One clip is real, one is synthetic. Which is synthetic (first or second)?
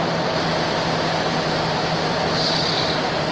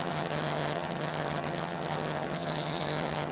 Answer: second